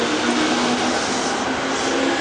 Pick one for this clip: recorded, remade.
recorded